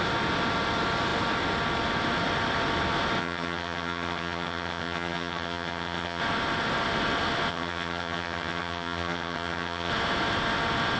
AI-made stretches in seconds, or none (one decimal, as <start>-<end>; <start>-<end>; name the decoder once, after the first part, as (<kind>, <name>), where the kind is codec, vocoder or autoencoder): 3.2-6.2 (vocoder, HiFi-GAN); 7.5-9.9

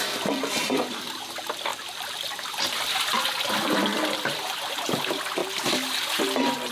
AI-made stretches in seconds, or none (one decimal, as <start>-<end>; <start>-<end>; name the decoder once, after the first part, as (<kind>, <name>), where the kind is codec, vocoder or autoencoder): 0.0-1.7 (vocoder, BigVGAN v2); 2.7-5.4; 6.2-6.7

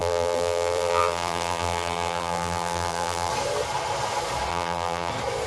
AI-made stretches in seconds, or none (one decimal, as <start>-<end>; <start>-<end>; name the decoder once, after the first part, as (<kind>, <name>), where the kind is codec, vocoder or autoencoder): 0.0-3.3 (vocoder, BigVGAN v2); 4.5-5.1

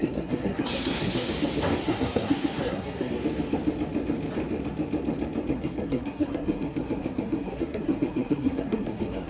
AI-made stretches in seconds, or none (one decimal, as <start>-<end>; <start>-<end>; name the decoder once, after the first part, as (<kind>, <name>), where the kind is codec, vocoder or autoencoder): 0.0-1.3 (codec, SNAC); 1.8-3.1; 5.5-9.3

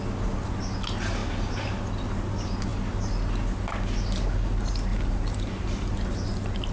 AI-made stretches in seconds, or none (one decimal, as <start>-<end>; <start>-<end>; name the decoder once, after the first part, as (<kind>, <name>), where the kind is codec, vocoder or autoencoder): 4.9-5.9 (vocoder, BigVGAN v2)

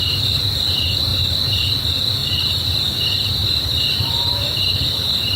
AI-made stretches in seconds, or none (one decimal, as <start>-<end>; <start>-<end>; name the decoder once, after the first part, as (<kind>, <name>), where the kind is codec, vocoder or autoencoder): 1.1-1.7 (vocoder, BigVGAN v2); 2.2-2.8; 3.4-5.4